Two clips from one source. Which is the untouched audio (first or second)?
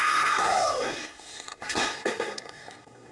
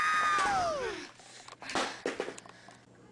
second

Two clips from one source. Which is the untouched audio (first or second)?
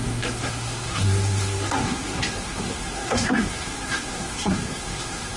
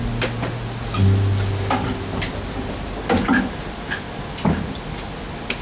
second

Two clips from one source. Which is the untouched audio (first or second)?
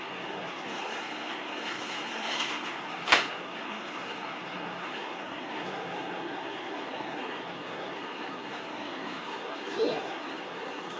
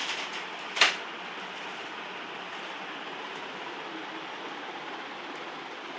second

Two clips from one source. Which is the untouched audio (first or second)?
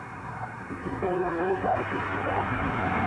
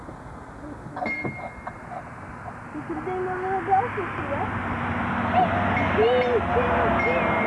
second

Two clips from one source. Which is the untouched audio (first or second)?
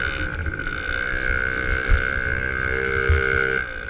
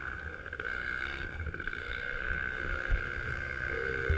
first